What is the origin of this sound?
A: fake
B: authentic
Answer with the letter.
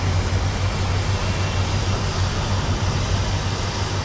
B